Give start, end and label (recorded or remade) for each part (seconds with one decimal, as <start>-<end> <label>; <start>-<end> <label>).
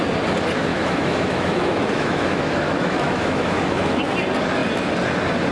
0.0-0.7 recorded; 0.7-4.0 remade; 4.0-5.5 recorded